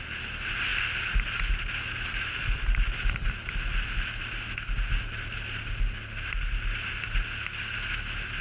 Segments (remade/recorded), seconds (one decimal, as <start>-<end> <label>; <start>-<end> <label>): 0.0-8.4 recorded